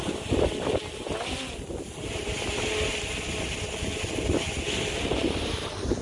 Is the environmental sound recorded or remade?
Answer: recorded